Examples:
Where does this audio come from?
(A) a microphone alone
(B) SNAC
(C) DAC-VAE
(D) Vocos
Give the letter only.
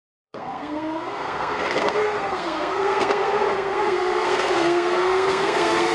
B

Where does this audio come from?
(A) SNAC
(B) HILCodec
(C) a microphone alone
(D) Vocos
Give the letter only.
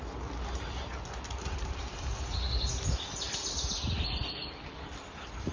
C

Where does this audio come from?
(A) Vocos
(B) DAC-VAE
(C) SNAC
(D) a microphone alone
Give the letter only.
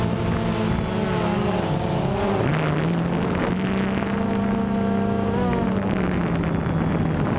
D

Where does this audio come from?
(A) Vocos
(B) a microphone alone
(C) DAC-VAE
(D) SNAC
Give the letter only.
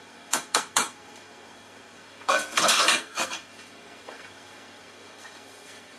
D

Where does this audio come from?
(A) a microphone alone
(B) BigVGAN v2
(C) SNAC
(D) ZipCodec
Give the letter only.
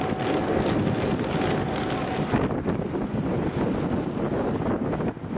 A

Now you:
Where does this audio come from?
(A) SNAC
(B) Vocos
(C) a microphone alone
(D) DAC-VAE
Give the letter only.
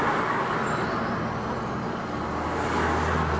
C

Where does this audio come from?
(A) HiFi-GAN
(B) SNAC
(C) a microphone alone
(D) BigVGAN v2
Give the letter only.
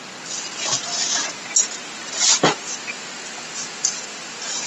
C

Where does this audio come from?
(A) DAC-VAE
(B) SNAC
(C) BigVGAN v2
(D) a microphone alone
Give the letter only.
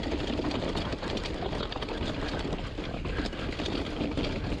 D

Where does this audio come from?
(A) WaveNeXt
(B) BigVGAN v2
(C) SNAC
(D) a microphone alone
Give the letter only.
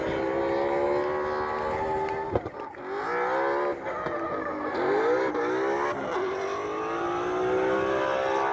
D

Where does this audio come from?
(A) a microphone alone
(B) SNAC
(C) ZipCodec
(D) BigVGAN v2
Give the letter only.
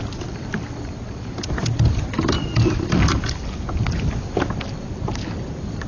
A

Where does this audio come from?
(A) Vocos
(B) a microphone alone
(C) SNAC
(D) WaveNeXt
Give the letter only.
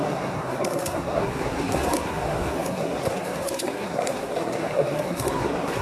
C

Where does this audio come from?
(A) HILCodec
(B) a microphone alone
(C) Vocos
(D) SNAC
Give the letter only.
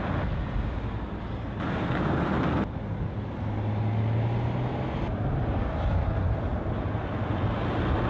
B